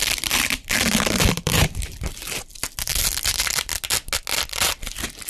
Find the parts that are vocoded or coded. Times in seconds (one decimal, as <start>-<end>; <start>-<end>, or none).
0.0-2.6; 3.3-3.7; 4.3-5.3